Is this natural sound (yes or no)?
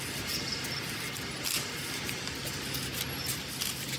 yes